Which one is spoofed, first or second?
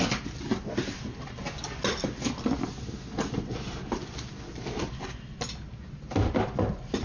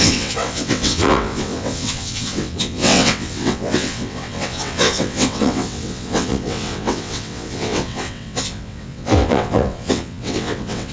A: second